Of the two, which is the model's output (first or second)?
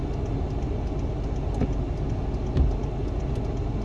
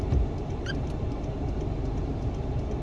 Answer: second